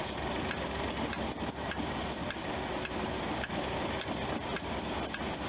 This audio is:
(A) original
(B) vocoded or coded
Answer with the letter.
A